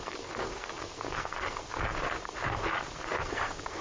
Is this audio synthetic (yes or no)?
yes